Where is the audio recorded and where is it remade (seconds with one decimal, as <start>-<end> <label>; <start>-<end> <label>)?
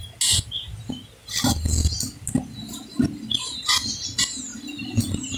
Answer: 0.0-5.4 recorded